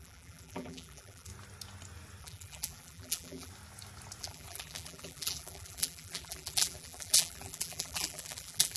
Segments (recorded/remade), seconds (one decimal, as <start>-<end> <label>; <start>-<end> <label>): 0.0-1.3 remade; 1.3-2.2 recorded; 2.2-3.5 remade; 3.5-4.2 recorded; 4.2-8.8 remade